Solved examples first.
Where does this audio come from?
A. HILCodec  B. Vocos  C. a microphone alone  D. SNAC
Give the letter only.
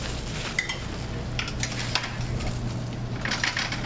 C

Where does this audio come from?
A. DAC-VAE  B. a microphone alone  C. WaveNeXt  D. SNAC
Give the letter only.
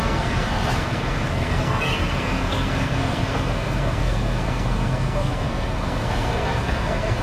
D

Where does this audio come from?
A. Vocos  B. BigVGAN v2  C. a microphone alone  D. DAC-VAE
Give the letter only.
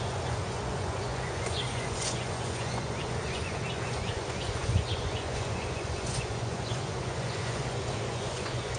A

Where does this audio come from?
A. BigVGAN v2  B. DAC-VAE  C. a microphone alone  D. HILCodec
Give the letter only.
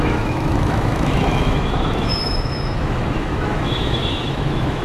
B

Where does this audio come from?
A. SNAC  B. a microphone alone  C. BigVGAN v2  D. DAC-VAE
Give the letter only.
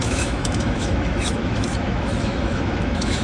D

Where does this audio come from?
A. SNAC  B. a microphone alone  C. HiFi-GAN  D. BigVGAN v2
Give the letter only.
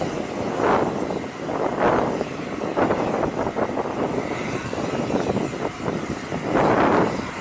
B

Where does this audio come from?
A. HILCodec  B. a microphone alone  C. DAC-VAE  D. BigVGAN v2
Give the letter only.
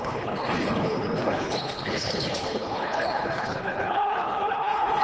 A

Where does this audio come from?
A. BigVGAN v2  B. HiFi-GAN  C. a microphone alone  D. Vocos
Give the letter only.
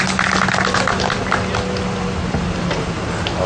C